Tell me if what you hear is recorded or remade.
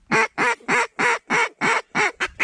recorded